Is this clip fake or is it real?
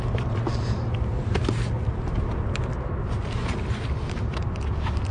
real